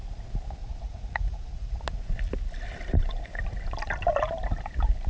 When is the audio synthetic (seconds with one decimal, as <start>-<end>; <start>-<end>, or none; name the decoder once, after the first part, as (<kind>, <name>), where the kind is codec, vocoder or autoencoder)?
0.6-1.7 (vocoder, Vocos)

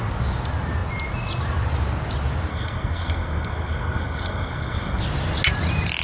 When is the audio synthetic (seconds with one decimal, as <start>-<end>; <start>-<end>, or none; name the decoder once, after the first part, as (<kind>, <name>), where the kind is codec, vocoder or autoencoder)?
2.5-5.0 (codec, SNAC)

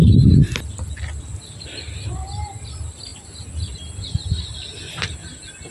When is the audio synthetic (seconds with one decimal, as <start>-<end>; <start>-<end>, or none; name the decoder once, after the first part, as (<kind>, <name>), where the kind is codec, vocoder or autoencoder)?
none